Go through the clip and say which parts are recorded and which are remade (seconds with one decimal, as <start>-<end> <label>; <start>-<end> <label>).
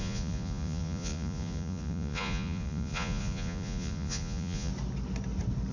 0.0-4.7 remade; 4.7-5.7 recorded